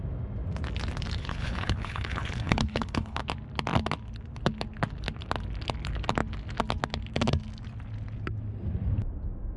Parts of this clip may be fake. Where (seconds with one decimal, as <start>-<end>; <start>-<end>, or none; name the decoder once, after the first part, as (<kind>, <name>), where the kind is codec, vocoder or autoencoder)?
1.2-3.2 (codec, HILCodec)